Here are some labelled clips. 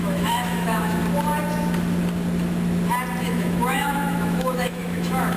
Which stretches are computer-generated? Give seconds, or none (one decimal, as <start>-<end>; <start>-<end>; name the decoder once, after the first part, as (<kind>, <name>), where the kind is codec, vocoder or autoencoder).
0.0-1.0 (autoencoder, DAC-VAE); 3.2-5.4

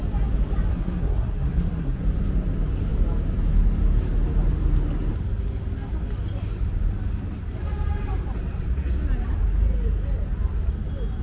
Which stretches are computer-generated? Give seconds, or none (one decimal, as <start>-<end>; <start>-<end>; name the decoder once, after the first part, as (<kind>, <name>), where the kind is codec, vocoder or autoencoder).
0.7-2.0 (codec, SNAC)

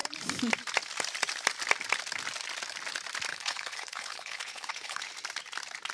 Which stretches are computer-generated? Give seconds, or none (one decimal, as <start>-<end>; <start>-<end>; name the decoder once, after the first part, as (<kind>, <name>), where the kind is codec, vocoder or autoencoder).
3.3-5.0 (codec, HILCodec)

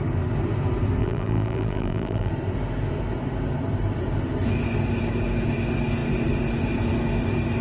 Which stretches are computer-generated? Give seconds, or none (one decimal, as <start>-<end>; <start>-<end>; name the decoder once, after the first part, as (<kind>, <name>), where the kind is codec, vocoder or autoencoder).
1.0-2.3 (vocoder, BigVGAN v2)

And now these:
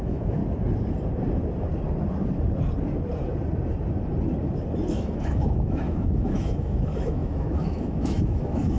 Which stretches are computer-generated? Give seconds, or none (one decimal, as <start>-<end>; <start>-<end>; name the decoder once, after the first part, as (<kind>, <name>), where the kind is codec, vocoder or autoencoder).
0.0-0.4 (autoencoder, DAC-VAE); 4.9-8.8

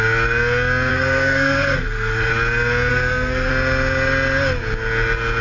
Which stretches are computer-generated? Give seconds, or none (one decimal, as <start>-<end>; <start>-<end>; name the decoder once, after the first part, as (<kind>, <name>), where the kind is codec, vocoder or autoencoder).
0.9-2.3 (codec, SNAC); 2.9-3.5